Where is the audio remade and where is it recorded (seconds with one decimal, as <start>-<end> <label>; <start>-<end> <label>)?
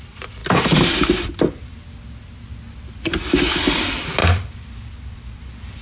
0.0-0.4 recorded; 0.4-1.8 remade; 1.8-4.2 recorded; 4.2-5.8 remade